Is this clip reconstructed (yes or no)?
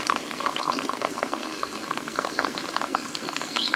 yes